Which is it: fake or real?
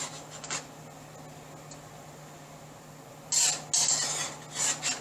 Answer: real